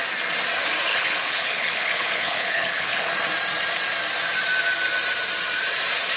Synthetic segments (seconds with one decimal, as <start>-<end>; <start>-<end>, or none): 0.9-3.1